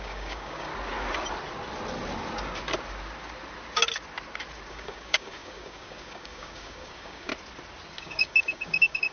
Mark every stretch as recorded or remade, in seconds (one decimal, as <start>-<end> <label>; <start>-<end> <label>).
0.0-0.7 remade; 0.7-4.7 recorded; 4.7-7.3 remade; 7.3-8.0 recorded; 8.0-9.1 remade